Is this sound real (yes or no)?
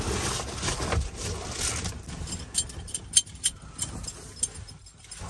yes